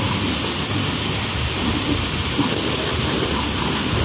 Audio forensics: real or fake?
real